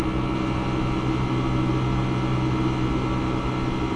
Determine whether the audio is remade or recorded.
recorded